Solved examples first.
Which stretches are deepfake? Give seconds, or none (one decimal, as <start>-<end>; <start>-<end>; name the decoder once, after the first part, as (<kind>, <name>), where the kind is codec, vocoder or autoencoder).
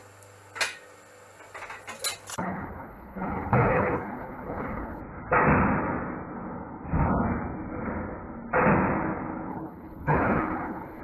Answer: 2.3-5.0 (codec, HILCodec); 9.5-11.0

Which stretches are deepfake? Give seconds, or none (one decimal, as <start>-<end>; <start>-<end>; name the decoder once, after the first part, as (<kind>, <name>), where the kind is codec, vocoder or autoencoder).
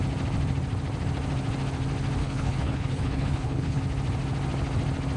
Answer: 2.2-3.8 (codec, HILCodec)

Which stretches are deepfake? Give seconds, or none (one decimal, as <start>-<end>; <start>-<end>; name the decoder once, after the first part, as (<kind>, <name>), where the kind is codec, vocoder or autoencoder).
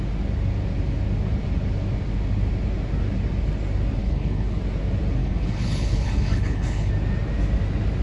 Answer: 4.0-4.6 (codec, HILCodec); 5.2-6.9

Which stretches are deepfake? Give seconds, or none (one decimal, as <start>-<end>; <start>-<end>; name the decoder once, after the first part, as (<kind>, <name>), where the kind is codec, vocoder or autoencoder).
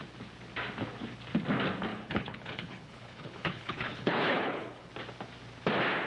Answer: 1.9-4.9 (codec, HILCodec)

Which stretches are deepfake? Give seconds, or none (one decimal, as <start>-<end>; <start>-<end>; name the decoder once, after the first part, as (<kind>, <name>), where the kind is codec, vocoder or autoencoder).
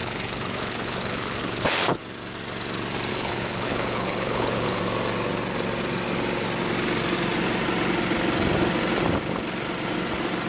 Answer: 0.0-2.0 (codec, HILCodec); 3.1-4.8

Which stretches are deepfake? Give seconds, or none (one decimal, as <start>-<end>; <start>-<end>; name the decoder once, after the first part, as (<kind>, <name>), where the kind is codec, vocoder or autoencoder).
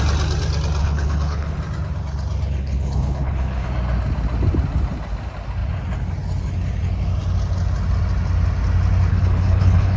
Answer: 0.8-1.6 (codec, HILCodec); 2.6-3.7; 9.1-10.0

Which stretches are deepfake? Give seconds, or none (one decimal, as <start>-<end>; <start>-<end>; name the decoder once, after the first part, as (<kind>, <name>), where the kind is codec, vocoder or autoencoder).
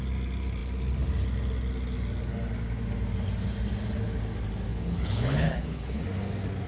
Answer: 4.7-6.0 (codec, HILCodec)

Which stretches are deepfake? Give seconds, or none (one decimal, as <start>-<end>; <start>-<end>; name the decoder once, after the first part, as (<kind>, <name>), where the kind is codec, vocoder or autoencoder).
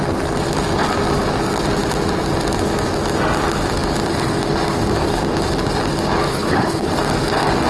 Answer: 6.3-6.9 (codec, HILCodec)